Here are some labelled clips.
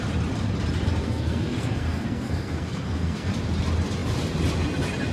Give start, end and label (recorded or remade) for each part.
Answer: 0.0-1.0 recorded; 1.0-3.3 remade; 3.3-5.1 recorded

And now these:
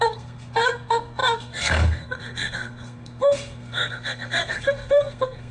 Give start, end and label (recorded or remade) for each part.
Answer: 0.0-5.5 remade

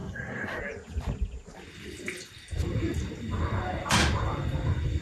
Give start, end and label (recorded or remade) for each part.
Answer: 0.0-0.6 remade; 0.6-5.0 recorded